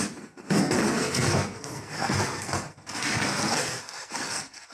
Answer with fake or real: fake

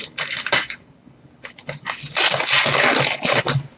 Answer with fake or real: real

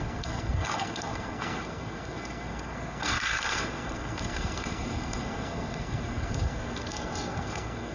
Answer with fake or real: fake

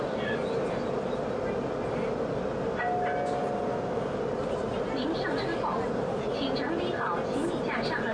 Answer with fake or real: real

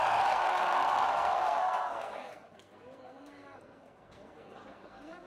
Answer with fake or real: fake